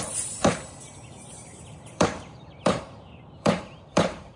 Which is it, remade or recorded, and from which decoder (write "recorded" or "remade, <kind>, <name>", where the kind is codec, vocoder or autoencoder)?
remade, vocoder, BigVGAN v2